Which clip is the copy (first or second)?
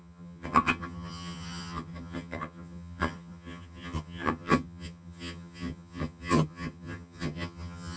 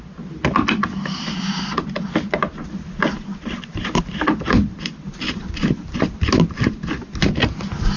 first